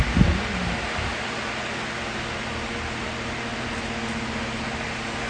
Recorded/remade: recorded